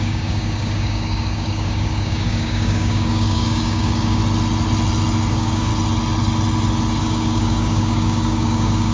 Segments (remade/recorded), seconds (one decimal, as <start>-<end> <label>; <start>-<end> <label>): 0.0-4.2 remade; 4.2-5.3 recorded; 5.3-5.7 remade; 5.7-7.0 recorded; 7.0-8.9 remade